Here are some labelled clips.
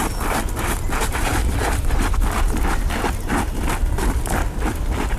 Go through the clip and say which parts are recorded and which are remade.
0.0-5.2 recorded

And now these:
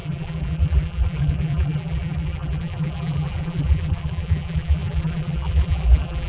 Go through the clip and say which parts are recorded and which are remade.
0.0-6.3 remade

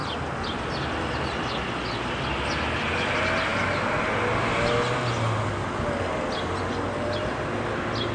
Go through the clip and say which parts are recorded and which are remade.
0.0-3.5 recorded; 3.5-4.0 remade; 4.0-8.1 recorded

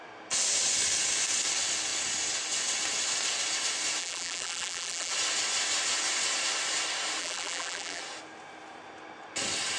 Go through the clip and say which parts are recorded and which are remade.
0.0-4.0 recorded; 4.0-5.1 remade; 5.1-7.2 recorded; 7.2-8.0 remade; 8.0-9.8 recorded

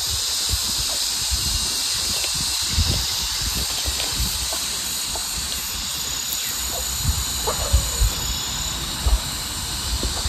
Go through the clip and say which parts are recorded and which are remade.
0.0-5.2 recorded; 5.2-6.0 remade; 6.0-10.3 recorded

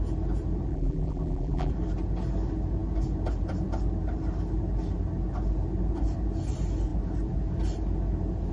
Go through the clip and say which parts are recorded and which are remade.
0.0-0.7 recorded; 0.7-1.7 remade; 1.7-8.5 recorded

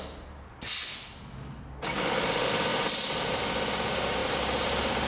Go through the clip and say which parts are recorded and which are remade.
0.0-2.7 recorded; 2.7-3.4 remade; 3.4-4.2 recorded; 4.2-5.1 remade